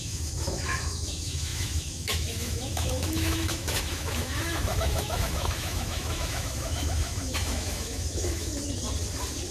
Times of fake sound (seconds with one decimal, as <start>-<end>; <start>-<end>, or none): 0.0-8.5